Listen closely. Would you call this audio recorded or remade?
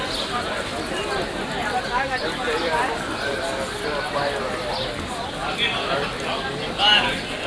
recorded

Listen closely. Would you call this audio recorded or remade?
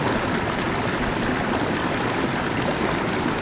recorded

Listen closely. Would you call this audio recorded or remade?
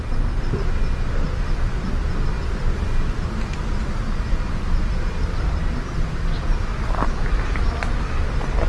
recorded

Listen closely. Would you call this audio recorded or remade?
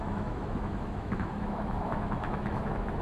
remade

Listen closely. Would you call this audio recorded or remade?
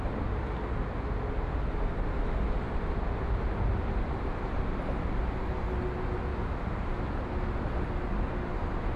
recorded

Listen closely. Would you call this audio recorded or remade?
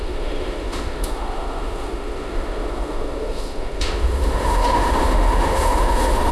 remade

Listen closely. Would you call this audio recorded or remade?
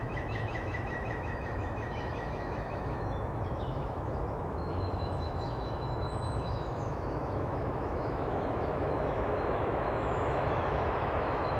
remade